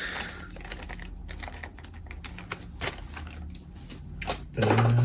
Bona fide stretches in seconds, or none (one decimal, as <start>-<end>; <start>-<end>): 0.0-5.0